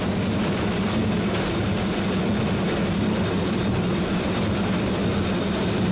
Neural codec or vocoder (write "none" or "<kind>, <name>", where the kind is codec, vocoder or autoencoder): none